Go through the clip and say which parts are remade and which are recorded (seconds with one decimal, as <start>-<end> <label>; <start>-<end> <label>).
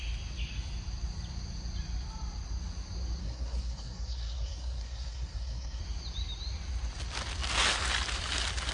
0.0-3.2 recorded; 3.2-5.8 remade; 5.8-8.7 recorded